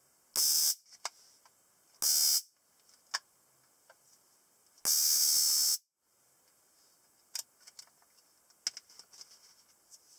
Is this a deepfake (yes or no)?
no